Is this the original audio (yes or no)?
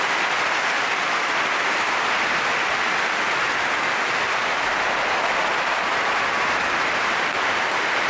yes